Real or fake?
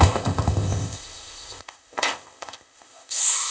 fake